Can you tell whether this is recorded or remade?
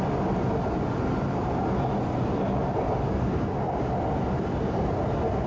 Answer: recorded